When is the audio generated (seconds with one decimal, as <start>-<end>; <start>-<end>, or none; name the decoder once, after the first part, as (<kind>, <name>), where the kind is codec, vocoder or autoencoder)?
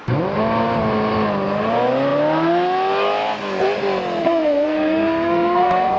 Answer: 4.2-6.0 (codec, SNAC)